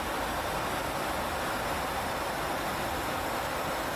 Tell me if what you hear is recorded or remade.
recorded